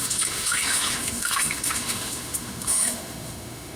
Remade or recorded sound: remade